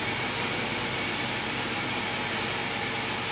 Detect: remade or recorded recorded